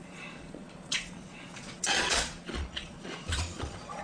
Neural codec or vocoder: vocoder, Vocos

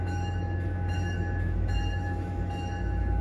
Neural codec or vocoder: autoencoder, DAC-VAE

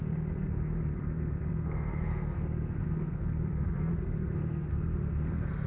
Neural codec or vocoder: codec, SNAC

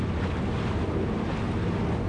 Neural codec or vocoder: none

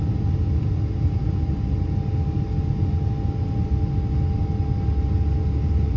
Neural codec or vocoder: none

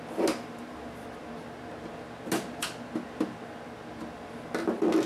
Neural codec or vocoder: none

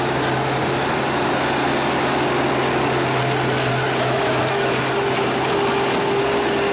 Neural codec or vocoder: none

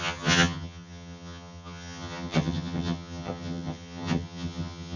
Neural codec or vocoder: vocoder, HiFi-GAN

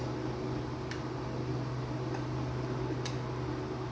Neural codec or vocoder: none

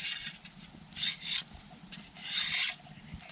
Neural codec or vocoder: none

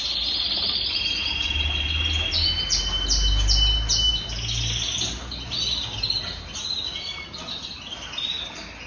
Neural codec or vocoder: none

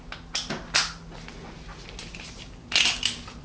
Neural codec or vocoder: none